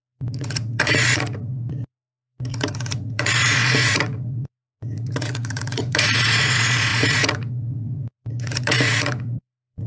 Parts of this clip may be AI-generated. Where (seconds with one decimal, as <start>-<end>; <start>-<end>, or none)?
0.0-9.9